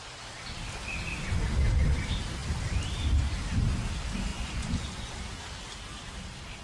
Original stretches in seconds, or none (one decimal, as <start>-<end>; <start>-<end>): 0.0-4.3; 5.1-6.6

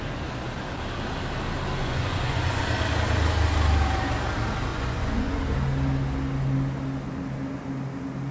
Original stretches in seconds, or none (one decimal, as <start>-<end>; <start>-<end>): 0.0-1.8; 2.6-4.7; 5.4-8.3

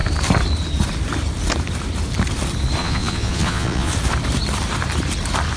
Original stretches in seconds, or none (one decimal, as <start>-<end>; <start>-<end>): 0.0-2.8; 3.9-5.6

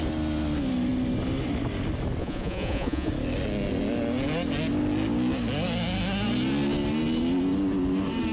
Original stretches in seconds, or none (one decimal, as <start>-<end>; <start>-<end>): 0.0-2.2; 3.1-8.3

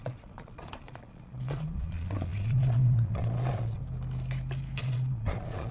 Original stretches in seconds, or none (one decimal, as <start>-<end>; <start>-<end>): 3.8-4.8

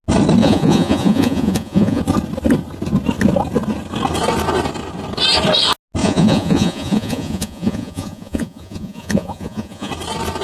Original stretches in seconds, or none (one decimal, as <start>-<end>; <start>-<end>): 0.0-0.4; 2.0-6.0; 9.9-10.4

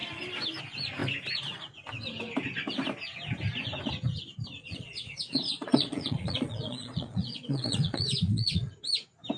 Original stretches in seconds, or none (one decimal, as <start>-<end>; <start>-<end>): 0.0-4.6; 8.7-9.4